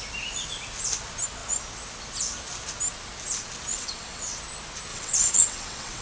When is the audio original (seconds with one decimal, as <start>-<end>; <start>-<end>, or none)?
0.0-3.7; 4.4-4.9

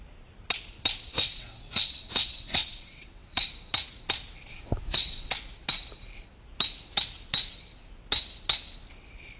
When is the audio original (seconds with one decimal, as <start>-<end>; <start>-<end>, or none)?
0.0-1.1; 3.5-4.5; 5.3-9.4

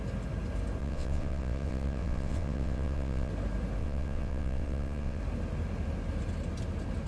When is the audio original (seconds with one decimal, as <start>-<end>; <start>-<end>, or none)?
0.0-0.8; 3.3-3.8; 5.2-7.1

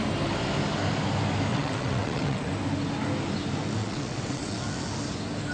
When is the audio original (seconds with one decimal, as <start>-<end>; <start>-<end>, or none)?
0.0-1.5; 2.5-3.8; 4.6-5.5